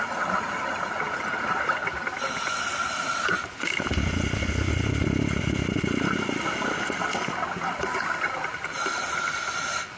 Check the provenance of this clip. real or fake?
real